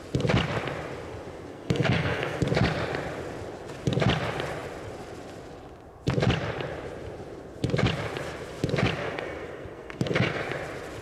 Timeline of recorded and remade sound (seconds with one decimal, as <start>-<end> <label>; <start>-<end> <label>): 0.0-1.5 recorded; 1.5-2.4 remade; 2.4-9.0 recorded; 9.0-10.4 remade; 10.4-11.0 recorded